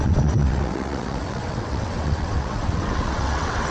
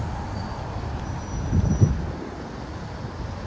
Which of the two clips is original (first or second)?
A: second